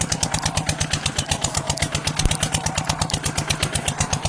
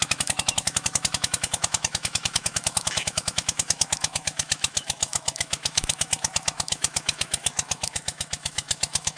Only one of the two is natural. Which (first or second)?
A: first